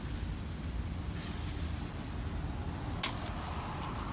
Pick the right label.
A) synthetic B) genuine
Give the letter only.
B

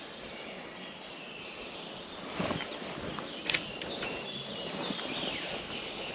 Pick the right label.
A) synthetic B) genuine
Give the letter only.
B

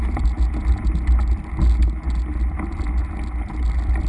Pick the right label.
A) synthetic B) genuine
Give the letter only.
B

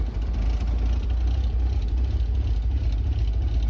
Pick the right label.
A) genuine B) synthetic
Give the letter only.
A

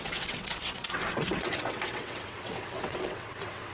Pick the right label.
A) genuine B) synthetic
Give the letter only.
B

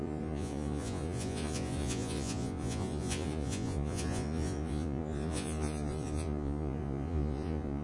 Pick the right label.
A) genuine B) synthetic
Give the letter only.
B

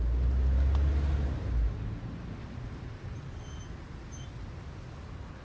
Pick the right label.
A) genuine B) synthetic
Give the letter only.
A